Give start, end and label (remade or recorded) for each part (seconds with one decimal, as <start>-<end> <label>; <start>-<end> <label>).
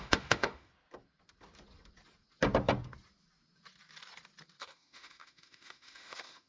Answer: 0.0-0.7 remade; 0.7-4.6 recorded; 4.6-6.5 remade